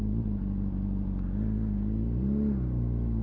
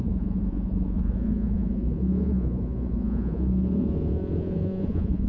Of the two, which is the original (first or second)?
first